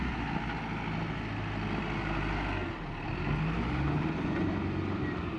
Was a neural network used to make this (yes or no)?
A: no